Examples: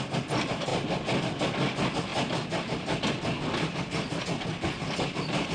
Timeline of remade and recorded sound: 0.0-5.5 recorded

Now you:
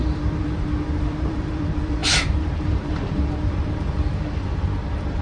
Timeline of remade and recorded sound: 0.0-5.2 remade